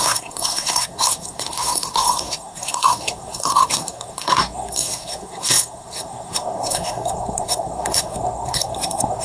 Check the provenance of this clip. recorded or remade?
remade